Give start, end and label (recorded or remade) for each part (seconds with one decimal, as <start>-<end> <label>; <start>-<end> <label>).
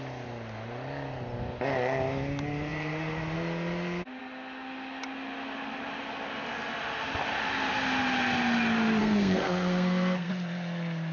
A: 0.0-9.0 recorded; 9.0-10.3 remade; 10.3-11.1 recorded